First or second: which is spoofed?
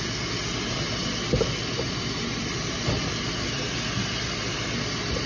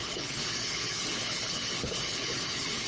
second